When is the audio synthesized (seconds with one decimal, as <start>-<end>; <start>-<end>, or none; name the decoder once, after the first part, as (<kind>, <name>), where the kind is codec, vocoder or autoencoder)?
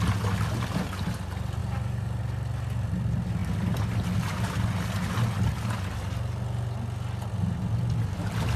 1.6-2.2 (vocoder, BigVGAN v2)